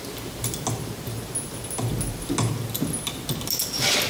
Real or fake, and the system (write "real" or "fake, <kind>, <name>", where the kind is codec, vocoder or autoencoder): real